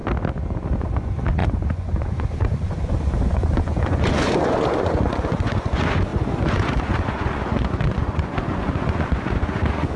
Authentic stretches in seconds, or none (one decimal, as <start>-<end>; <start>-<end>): 0.0-0.8